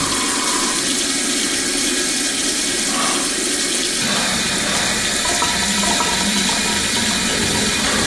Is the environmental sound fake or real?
real